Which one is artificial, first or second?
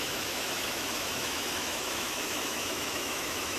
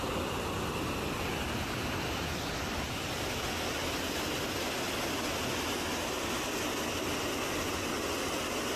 first